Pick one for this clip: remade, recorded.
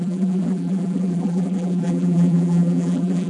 remade